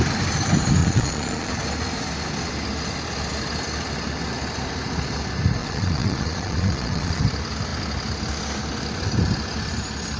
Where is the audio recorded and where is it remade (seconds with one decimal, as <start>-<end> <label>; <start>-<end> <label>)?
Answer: 0.0-0.8 recorded; 0.8-1.5 remade; 1.5-5.6 recorded; 5.6-7.2 remade; 7.2-10.2 recorded